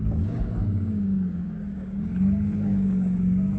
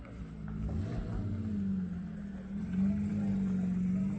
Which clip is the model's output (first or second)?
first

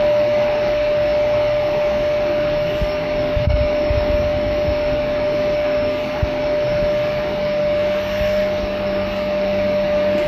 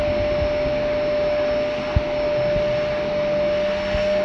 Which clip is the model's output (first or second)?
first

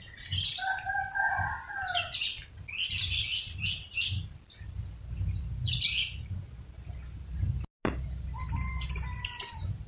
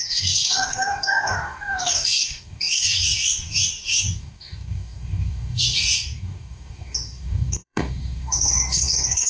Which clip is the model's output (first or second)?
second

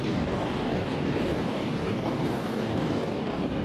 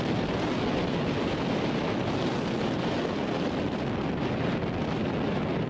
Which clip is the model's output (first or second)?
first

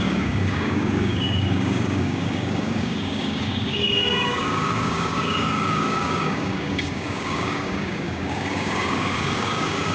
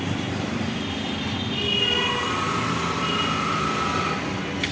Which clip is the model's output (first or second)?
first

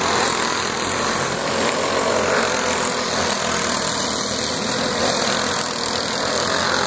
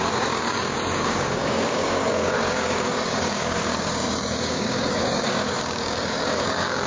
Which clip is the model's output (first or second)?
second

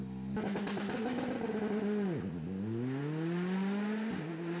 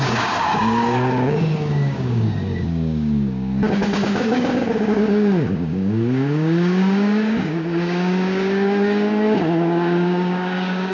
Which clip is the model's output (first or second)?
second